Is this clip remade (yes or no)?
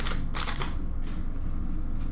no